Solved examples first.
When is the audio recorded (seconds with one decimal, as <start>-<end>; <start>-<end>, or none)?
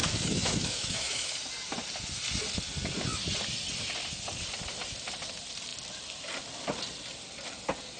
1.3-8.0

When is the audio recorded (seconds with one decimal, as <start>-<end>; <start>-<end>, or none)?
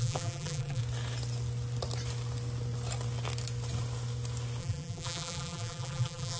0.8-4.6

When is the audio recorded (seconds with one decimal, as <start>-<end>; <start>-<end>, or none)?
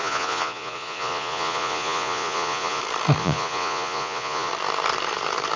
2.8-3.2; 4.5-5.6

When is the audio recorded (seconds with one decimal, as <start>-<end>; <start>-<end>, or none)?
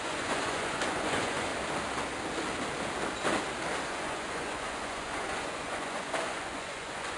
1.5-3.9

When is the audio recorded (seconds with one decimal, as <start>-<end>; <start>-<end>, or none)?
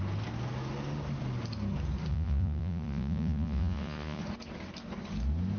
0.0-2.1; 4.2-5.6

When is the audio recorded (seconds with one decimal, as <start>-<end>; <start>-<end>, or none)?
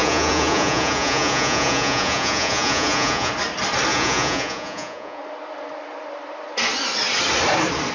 3.3-3.9; 5.2-7.9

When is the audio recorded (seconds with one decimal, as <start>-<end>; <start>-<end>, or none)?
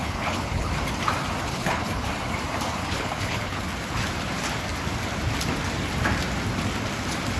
0.7-1.5; 2.1-2.8; 3.6-7.4